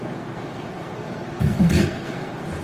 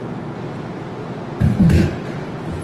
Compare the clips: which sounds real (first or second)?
second